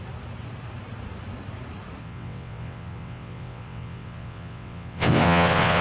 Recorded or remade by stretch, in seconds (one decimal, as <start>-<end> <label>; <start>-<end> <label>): 0.0-2.0 recorded; 2.0-5.8 remade